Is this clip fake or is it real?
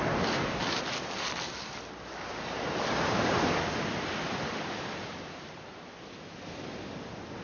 real